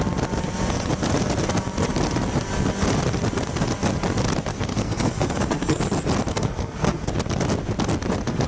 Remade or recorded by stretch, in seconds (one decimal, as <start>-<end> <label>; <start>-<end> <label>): 0.0-4.5 recorded; 4.5-5.8 remade; 5.8-6.3 recorded; 6.3-7.1 remade; 7.1-8.5 recorded

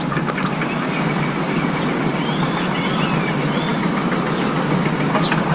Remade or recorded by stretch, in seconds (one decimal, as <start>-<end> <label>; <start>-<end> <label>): 0.0-5.5 recorded

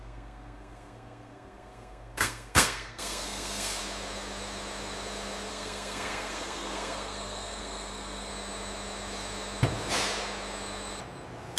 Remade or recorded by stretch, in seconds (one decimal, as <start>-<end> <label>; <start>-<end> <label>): 0.0-3.8 remade; 3.8-5.5 recorded; 5.5-8.3 remade; 8.3-11.6 recorded

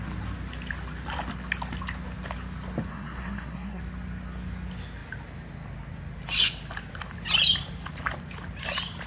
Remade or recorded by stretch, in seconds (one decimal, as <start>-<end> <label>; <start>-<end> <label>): 0.0-2.9 recorded; 2.9-3.8 remade; 3.8-9.1 recorded

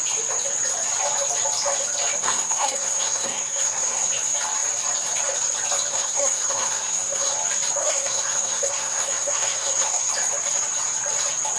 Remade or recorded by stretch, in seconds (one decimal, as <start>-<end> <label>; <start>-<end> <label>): 0.0-2.2 recorded; 2.2-4.1 remade; 4.1-5.9 recorded; 5.9-7.3 remade; 7.3-7.8 recorded; 7.8-10.1 remade; 10.1-11.6 recorded

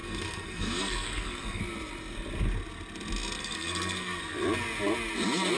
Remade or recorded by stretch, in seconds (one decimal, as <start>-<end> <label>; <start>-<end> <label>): 0.0-1.6 remade; 1.6-3.4 recorded; 3.4-4.2 remade; 4.2-5.6 recorded

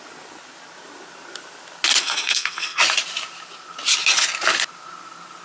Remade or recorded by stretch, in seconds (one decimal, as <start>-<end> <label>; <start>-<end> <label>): 0.0-2.0 recorded; 2.0-2.8 remade; 2.8-5.4 recorded